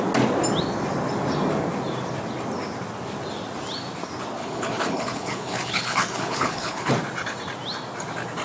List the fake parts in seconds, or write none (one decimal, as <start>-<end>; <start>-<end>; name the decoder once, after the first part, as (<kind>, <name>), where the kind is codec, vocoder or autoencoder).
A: 4.4-6.9 (codec, HILCodec)